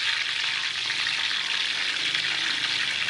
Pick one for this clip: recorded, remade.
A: recorded